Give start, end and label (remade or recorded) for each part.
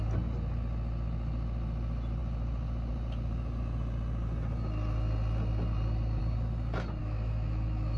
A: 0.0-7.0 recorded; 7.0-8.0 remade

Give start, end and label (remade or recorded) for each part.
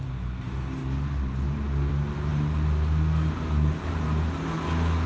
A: 0.0-5.1 recorded